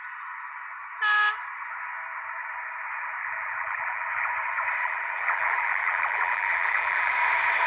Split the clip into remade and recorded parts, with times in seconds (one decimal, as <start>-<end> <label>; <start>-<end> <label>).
0.0-3.2 recorded; 3.2-4.3 remade; 4.3-4.8 recorded; 4.8-7.1 remade; 7.1-7.7 recorded